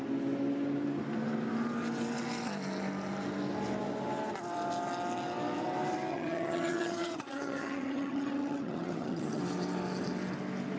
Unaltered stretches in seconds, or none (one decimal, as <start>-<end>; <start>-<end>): 0.0-6.1; 9.4-10.8